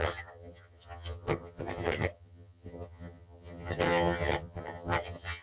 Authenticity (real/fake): fake